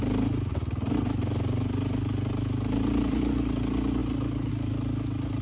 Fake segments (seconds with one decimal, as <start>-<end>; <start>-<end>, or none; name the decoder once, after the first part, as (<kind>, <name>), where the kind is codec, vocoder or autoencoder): none